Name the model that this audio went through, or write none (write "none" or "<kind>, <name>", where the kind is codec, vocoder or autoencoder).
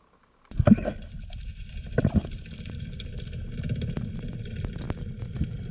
none